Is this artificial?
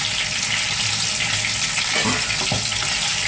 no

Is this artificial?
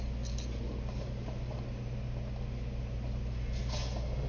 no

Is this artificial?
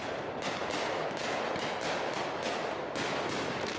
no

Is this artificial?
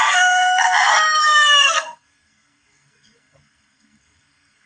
yes